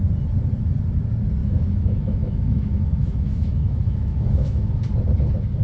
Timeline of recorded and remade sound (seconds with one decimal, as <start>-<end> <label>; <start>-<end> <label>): 0.0-1.4 recorded; 1.4-4.7 remade; 4.7-5.6 recorded